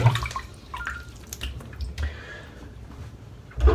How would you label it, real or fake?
fake